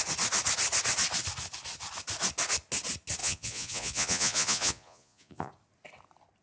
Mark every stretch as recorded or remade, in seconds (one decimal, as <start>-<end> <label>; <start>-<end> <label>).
0.0-3.2 recorded; 3.2-5.5 remade; 5.5-6.4 recorded